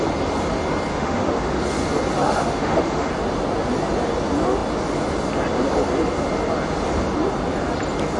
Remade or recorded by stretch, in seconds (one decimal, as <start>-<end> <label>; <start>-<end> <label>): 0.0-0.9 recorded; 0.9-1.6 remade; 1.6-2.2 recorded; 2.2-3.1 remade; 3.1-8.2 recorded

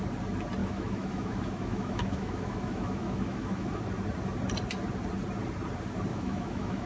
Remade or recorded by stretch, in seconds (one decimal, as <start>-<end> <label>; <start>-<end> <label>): 0.0-0.6 recorded; 0.6-3.8 remade; 3.8-6.1 recorded; 6.1-6.9 remade

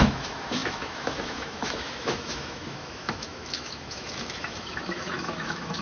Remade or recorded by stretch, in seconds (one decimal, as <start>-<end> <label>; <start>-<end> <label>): 0.0-5.8 remade

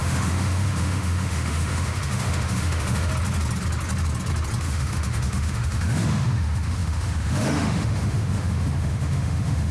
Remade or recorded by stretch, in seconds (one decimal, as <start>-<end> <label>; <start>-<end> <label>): 0.0-3.1 remade; 3.1-4.6 recorded; 4.6-9.7 remade